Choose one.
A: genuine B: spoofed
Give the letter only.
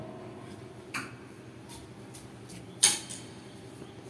B